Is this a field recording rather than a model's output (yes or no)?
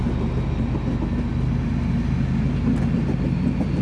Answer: yes